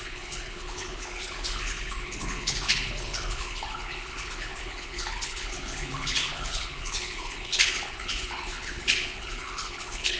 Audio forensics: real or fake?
fake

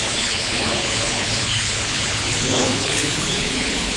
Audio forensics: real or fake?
fake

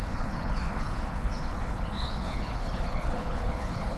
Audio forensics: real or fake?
fake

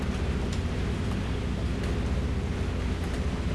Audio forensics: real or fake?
real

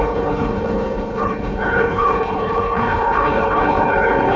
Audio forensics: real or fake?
fake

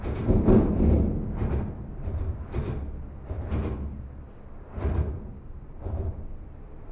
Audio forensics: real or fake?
real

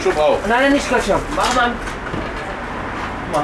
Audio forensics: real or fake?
real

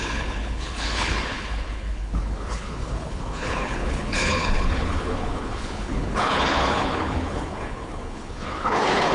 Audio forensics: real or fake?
fake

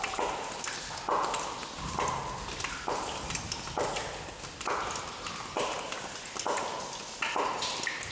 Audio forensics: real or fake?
real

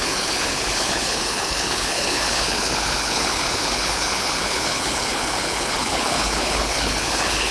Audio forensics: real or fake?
fake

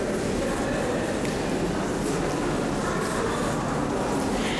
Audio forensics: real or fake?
real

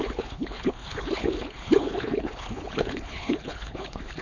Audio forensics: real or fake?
fake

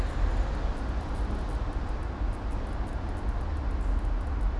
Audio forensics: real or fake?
real